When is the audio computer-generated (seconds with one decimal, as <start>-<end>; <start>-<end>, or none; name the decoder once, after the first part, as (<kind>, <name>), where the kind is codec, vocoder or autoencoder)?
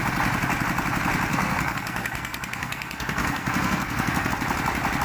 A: 1.3-4.3 (codec, SNAC)